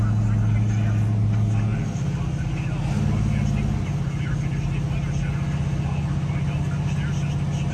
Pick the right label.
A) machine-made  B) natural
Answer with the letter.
B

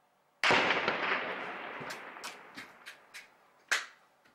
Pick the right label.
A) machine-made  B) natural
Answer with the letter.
B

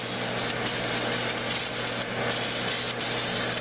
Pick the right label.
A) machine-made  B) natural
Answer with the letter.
B